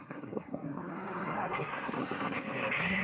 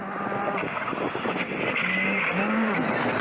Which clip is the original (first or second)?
second